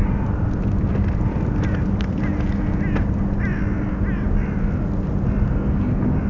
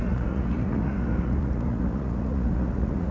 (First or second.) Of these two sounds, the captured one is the first